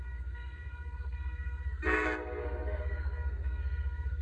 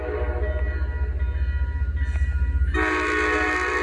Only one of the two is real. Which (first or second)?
second